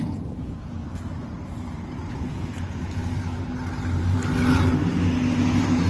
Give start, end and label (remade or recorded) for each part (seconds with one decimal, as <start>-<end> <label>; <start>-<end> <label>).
0.0-0.8 remade; 0.8-2.1 recorded; 2.1-3.0 remade; 3.0-5.9 recorded